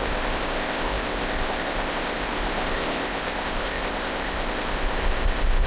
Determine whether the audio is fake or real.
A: fake